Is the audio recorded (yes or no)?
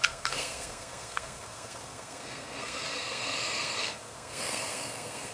no